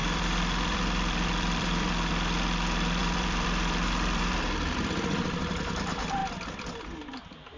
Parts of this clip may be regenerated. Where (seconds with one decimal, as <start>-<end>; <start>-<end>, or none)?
0.0-2.1; 3.0-5.2; 6.2-6.8